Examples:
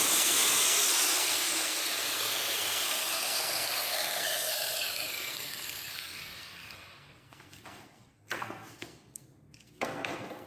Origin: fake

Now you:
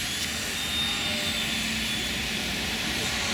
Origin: real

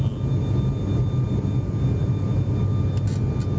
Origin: real